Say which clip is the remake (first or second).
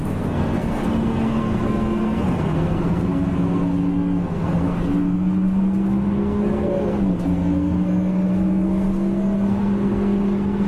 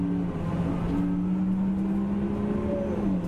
first